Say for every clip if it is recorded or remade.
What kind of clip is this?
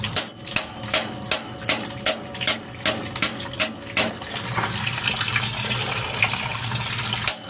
recorded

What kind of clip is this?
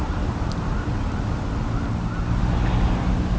recorded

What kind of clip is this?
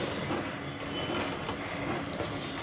recorded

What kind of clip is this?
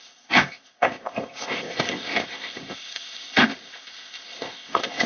remade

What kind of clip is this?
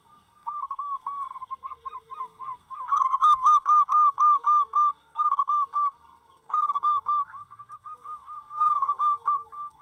remade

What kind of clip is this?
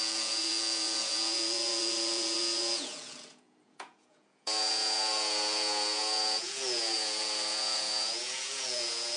remade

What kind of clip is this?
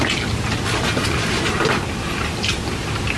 recorded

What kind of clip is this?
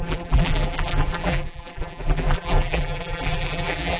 remade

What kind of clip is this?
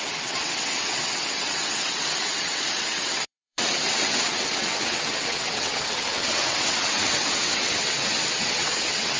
remade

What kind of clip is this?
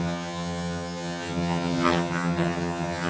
remade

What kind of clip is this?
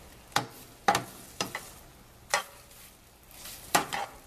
recorded